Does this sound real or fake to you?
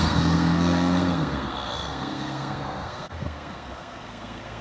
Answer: fake